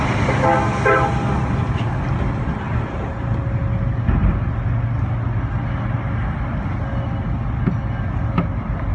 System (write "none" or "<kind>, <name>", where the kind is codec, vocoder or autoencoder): none